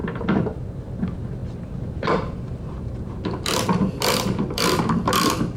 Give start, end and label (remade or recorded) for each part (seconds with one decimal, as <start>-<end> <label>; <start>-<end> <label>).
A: 0.0-0.8 recorded; 0.8-5.6 remade